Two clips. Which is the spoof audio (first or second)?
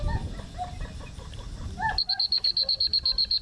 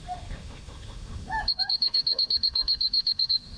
second